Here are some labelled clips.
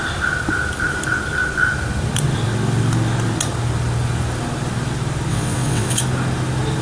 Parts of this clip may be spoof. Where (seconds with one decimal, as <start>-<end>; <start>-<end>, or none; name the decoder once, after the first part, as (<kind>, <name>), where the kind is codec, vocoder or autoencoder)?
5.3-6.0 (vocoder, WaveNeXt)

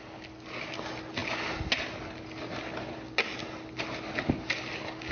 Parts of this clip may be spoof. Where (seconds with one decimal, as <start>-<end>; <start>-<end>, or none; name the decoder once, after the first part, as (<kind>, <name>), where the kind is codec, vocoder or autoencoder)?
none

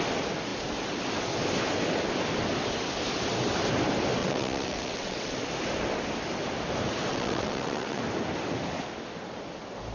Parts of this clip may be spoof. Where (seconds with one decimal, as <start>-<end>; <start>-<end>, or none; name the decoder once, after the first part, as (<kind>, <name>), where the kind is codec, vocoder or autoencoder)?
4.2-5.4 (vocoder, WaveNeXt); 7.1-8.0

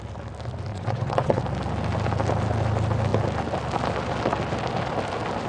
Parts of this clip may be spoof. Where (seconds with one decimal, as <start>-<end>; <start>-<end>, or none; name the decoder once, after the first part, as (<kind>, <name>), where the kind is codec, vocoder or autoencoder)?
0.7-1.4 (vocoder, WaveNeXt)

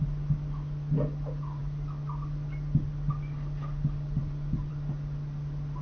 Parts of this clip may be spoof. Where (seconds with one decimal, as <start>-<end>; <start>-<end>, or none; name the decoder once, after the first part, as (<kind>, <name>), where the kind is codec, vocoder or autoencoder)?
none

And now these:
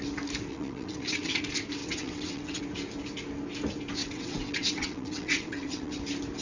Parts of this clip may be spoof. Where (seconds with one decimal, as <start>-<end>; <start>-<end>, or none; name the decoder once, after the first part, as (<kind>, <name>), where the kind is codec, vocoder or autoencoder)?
0.5-1.4 (vocoder, WaveNeXt); 1.8-2.6; 4.0-6.0

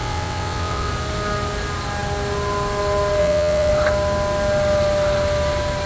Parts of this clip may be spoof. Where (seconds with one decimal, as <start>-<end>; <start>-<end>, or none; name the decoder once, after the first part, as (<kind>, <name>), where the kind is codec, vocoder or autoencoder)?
0.0-0.9 (vocoder, WaveNeXt); 3.2-3.7

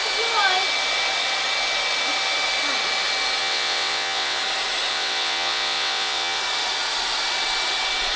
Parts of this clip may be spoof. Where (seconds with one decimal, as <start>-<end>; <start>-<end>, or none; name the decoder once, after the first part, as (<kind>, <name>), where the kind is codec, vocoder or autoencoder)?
3.4-4.4 (vocoder, WaveNeXt); 4.9-6.4